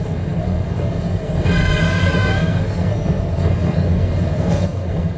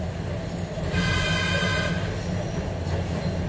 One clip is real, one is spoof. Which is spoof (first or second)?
first